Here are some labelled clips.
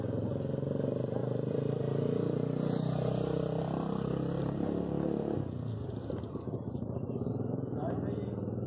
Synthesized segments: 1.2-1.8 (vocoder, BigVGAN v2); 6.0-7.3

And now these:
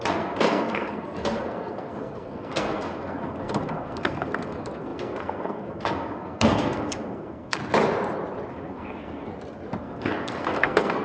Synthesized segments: 0.0-7.6 (codec, SNAC); 8.5-9.3; 9.8-11.0

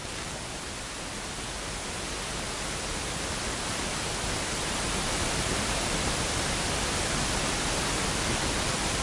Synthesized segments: none

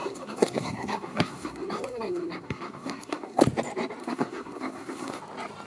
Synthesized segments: 0.0-3.4 (codec, SNAC); 4.0-5.2

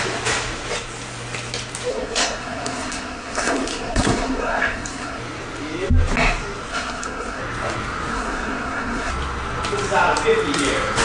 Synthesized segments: 1.9-5.2 (codec, SNAC); 6.7-7.4; 8.1-9.1

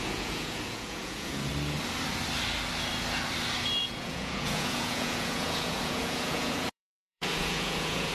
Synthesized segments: 0.0-1.5 (vocoder, Vocos); 3.8-8.1

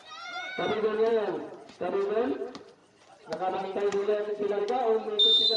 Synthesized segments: 1.1-1.9 (vocoder, Vocos); 2.8-4.6